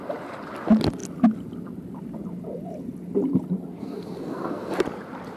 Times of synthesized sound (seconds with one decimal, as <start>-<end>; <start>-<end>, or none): 3.8-4.8